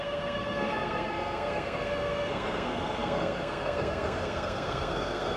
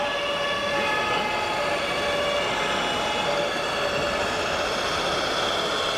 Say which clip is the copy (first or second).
first